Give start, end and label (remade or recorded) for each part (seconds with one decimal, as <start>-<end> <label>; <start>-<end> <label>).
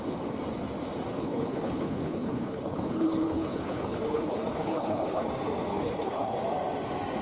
0.0-1.1 recorded; 1.1-5.3 remade; 5.3-5.7 recorded; 5.7-6.4 remade; 6.4-7.2 recorded